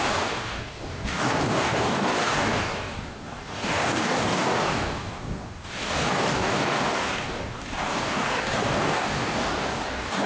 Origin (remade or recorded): remade